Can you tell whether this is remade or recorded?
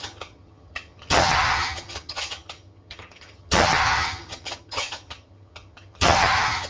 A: remade